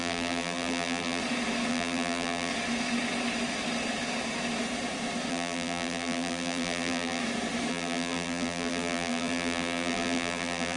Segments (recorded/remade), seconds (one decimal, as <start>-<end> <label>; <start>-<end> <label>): 0.0-1.2 remade; 1.2-1.7 recorded; 1.7-2.5 remade; 2.5-5.3 recorded; 5.3-7.2 remade; 7.2-7.7 recorded; 7.7-10.8 remade